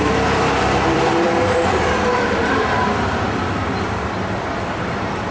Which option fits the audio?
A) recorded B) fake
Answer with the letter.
B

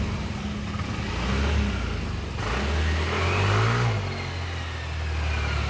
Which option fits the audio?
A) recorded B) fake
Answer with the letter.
A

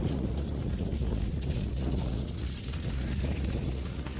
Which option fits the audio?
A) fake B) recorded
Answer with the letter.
A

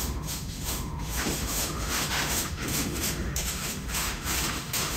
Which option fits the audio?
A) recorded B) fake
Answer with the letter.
B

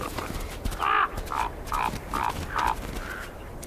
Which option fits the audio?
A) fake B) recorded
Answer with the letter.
B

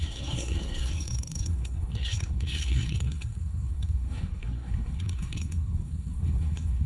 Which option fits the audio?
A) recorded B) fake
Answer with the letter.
B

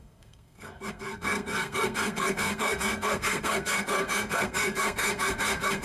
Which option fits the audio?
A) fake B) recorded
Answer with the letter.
A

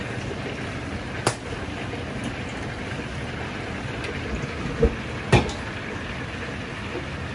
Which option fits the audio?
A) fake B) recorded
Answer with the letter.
B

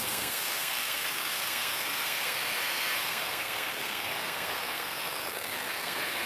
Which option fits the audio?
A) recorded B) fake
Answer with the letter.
B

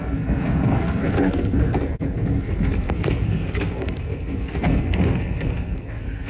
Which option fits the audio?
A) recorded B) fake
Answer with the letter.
B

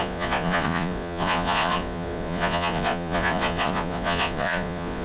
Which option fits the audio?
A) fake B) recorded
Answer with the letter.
A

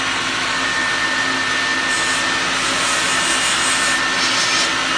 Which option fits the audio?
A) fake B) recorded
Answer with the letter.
B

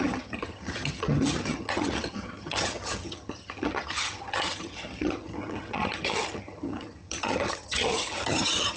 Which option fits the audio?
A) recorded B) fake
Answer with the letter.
B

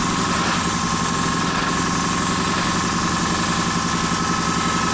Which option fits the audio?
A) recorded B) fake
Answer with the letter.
A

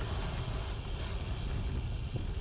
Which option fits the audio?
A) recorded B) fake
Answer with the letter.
A